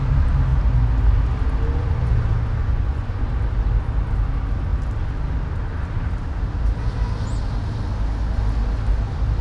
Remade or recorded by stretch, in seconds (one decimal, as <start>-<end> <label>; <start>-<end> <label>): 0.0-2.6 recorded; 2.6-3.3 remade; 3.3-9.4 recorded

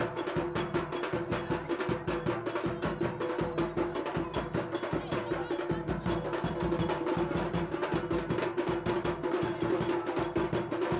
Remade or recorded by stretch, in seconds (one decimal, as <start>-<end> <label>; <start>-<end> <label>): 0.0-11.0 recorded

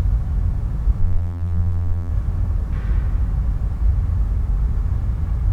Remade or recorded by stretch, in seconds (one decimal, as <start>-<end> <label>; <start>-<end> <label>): 0.0-1.0 recorded; 1.0-2.1 remade; 2.1-5.5 recorded